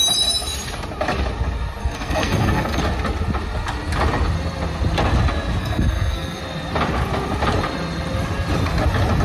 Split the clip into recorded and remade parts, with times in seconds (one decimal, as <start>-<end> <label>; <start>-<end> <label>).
0.0-1.8 recorded; 1.8-2.8 remade; 2.8-5.6 recorded; 5.6-6.4 remade; 6.4-9.2 recorded